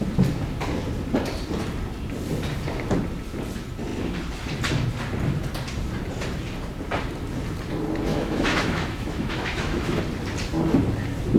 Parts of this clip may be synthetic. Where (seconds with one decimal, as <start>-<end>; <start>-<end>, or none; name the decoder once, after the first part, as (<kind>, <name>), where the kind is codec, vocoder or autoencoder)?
8.1-10.0 (autoencoder, DAC-VAE)